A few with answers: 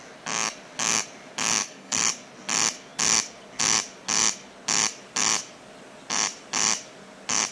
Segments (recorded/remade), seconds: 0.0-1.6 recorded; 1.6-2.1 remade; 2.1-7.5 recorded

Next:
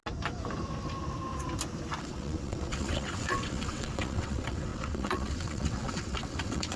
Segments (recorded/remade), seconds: 0.0-2.0 recorded; 2.0-6.8 remade

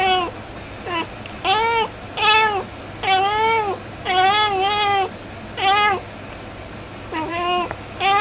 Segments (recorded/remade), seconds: 0.0-7.3 recorded; 7.3-8.2 remade

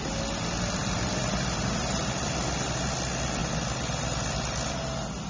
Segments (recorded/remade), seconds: 0.0-0.8 recorded; 0.8-2.4 remade; 2.4-3.4 recorded; 3.4-4.7 remade; 4.7-5.3 recorded

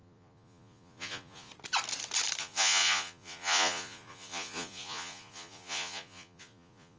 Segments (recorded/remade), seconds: 0.0-1.5 remade; 1.5-2.4 recorded; 2.4-7.0 remade